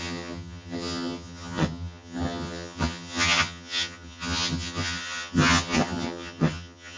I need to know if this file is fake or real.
fake